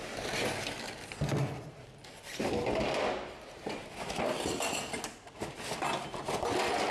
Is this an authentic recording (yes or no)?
yes